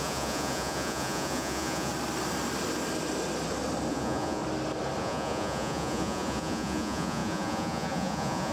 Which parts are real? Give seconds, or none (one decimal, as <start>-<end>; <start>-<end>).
1.9-3.9; 4.4-5.0